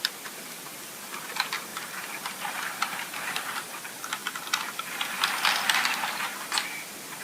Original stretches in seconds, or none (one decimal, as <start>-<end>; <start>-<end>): 0.0-1.7; 3.8-7.2